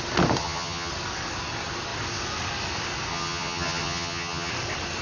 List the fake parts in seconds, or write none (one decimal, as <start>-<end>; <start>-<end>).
0.4-0.9; 3.1-4.5